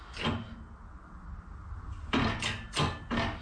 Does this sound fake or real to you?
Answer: real